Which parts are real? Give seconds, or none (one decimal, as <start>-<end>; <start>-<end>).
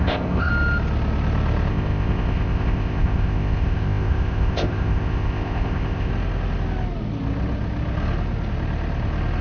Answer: 0.5-1.7; 6.1-9.4